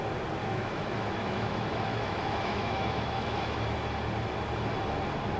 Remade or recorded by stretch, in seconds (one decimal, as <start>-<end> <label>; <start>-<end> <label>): 0.0-0.4 recorded; 0.4-3.6 remade; 3.6-5.4 recorded